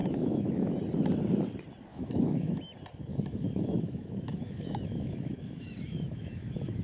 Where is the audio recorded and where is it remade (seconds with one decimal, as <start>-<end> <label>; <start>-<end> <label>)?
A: 0.0-0.7 remade; 0.7-1.9 recorded; 1.9-2.6 remade; 2.6-3.1 recorded; 3.1-6.8 remade